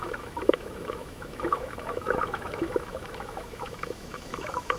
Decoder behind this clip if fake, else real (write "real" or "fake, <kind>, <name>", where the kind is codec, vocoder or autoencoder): fake, autoencoder, DAC-VAE